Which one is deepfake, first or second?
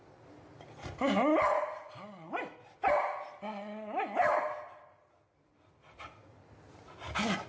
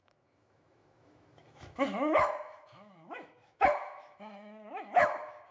second